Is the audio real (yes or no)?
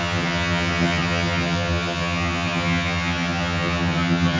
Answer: no